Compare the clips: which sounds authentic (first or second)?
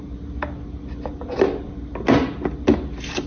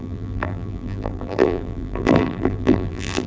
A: first